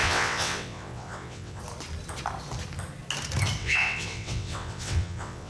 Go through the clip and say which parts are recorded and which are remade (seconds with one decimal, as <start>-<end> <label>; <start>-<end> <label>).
0.0-1.6 remade; 1.6-3.6 recorded; 3.6-5.5 remade